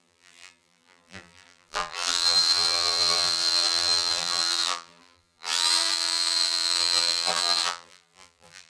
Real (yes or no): no